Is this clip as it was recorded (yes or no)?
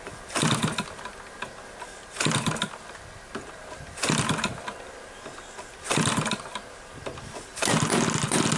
yes